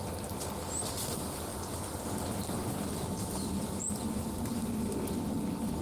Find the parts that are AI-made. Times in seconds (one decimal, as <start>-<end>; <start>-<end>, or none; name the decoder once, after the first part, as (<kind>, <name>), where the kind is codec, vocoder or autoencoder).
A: none